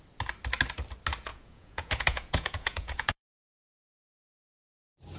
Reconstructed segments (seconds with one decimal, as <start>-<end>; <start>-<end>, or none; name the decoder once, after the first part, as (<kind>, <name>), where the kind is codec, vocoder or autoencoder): 1.3-4.4 (vocoder, Vocos)